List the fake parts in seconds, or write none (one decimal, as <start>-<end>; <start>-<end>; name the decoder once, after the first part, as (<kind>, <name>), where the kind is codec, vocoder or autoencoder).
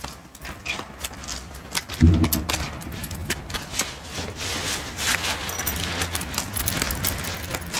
none